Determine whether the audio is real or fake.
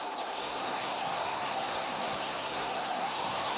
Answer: fake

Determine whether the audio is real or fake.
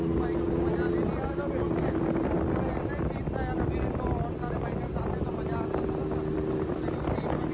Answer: real